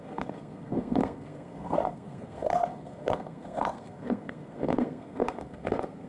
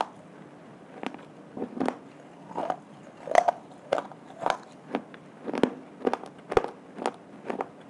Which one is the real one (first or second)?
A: second